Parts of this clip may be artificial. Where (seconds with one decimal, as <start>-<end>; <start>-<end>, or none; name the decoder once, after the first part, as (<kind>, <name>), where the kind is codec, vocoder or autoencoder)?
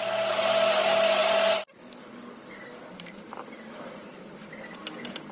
none